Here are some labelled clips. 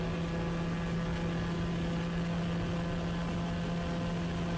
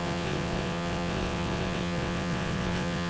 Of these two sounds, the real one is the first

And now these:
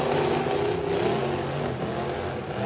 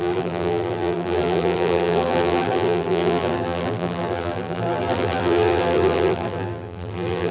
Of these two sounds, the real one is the first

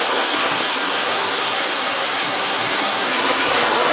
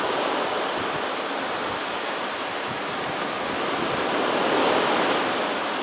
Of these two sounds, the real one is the second